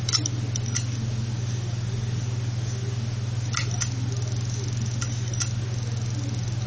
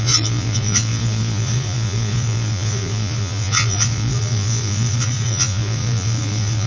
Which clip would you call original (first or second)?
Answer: first